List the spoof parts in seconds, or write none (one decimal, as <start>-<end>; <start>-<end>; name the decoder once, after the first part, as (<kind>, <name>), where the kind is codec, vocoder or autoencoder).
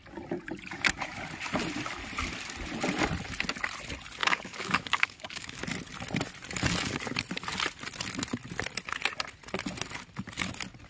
4.2-5.6 (codec, DAC)